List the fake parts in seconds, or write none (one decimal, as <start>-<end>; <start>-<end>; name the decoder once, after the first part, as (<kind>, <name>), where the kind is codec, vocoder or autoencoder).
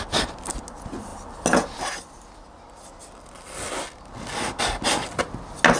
none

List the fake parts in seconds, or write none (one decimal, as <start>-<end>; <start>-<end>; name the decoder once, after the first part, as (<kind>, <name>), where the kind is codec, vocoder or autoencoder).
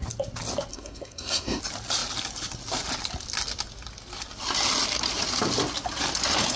0.7-1.6 (codec, SNAC)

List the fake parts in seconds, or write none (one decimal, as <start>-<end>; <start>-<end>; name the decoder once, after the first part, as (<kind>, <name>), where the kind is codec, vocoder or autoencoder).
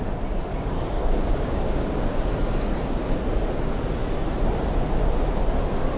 0.5-3.2 (codec, DAC)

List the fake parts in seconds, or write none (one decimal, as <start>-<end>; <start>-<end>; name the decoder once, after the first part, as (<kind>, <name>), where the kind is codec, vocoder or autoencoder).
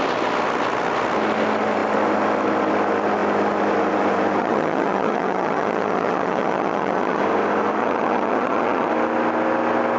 4.4-7.2 (vocoder, HiFi-GAN); 7.8-8.9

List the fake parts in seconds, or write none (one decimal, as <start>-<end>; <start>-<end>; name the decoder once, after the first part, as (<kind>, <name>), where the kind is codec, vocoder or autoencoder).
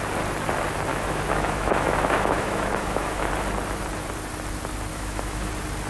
0.9-3.3 (autoencoder, DAC-VAE); 4.9-5.5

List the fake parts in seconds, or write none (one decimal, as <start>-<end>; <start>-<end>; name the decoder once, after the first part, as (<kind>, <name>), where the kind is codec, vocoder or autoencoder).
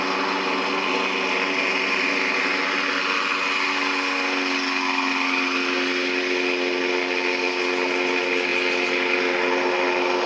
none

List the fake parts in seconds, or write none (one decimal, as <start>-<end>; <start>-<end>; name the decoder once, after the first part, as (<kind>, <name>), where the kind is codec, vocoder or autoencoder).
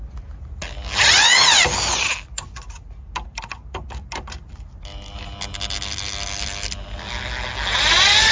none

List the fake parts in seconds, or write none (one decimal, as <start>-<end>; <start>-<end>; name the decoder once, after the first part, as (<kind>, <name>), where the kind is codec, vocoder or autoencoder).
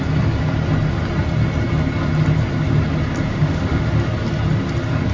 3.3-3.9 (autoencoder, DAC-VAE)